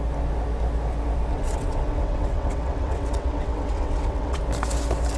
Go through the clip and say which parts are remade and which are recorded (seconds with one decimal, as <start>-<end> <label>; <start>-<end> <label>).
0.0-1.3 recorded; 1.3-4.4 remade; 4.4-5.2 recorded